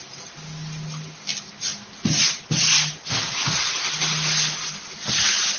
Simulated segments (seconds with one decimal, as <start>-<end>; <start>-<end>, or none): none